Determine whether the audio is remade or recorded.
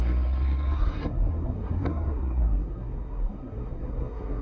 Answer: remade